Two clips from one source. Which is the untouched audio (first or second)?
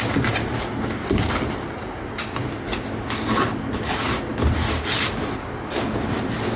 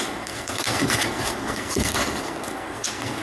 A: first